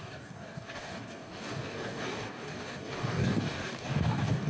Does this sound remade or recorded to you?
remade